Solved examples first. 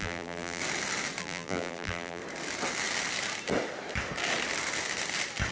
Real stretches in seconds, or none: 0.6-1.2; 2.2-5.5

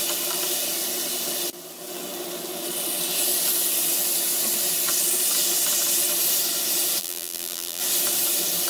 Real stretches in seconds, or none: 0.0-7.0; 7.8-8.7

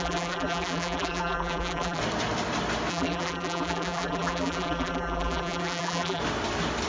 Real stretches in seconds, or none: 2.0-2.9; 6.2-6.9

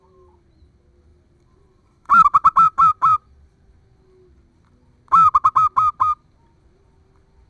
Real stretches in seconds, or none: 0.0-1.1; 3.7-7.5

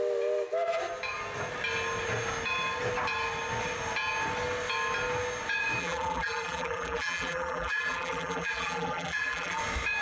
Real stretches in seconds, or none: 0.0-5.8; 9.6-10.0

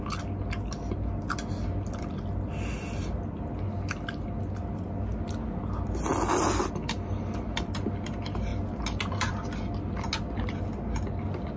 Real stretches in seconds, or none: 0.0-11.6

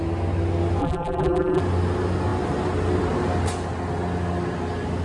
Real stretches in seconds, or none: 0.0-0.8; 1.6-5.0